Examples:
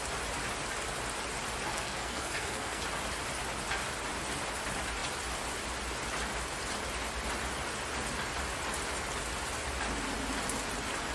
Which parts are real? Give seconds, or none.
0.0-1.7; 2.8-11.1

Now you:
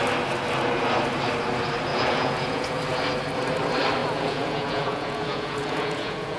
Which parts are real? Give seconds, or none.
0.0-1.9; 2.8-4.0

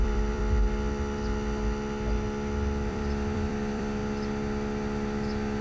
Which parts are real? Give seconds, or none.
0.4-2.9; 4.0-5.6

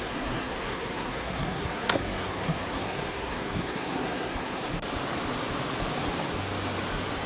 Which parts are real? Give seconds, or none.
4.7-7.3

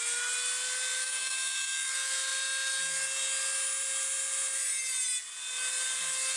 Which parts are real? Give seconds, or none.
0.0-0.9; 1.9-6.4

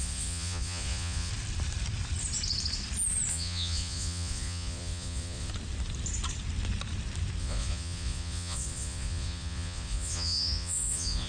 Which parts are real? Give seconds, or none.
1.3-3.3; 5.5-7.4

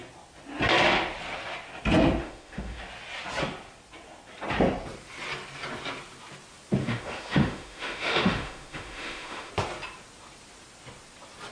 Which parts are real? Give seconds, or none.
0.0-2.2; 2.8-6.8; 9.5-11.5